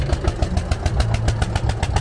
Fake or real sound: real